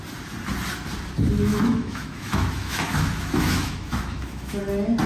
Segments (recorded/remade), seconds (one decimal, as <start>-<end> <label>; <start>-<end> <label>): 0.0-1.5 recorded; 1.5-4.6 remade; 4.6-5.1 recorded